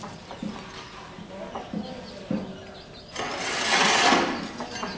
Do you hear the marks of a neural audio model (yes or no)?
no